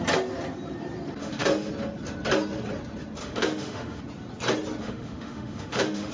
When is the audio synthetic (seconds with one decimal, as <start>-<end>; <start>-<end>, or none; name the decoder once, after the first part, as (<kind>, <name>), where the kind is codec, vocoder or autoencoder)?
1.2-1.7 (autoencoder, DAC-VAE); 3.2-4.0; 4.8-6.1